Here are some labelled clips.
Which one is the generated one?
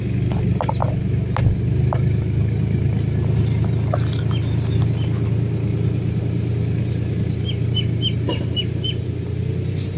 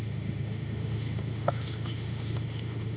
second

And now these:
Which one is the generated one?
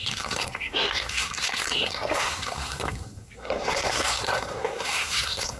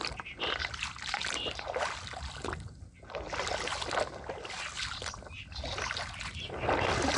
first